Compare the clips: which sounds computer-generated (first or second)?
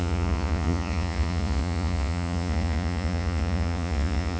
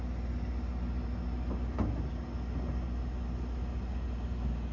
first